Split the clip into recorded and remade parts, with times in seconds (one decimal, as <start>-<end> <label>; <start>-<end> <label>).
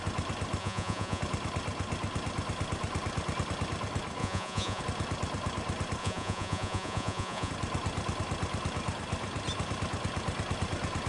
0.0-0.6 recorded; 0.6-1.2 remade; 1.2-4.2 recorded; 4.2-4.8 remade; 4.8-6.0 recorded; 6.0-7.5 remade; 7.5-11.1 recorded